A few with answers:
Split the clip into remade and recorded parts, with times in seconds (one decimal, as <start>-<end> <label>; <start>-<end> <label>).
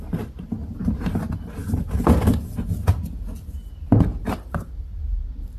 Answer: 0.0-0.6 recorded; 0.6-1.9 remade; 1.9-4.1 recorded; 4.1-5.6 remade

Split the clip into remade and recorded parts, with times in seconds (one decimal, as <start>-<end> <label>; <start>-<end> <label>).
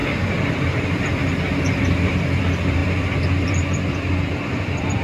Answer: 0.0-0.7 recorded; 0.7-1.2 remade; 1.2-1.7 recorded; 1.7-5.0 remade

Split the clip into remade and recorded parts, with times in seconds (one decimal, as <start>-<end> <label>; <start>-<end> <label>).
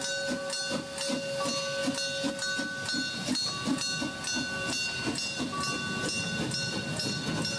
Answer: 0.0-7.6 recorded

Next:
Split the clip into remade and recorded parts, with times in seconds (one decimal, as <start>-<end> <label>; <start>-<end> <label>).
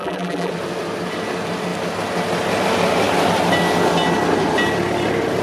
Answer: 0.0-0.5 remade; 0.5-5.4 recorded